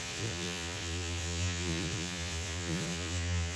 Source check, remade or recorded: remade